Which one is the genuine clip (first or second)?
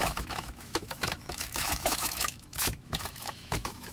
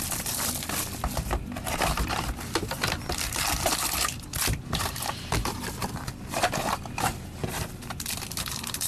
second